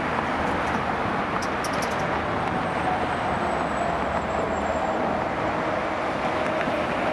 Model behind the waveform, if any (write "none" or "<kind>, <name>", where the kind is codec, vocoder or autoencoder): none